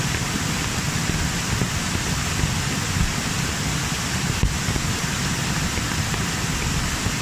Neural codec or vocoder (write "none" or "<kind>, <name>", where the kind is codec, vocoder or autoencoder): none